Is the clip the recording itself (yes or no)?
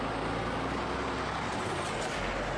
yes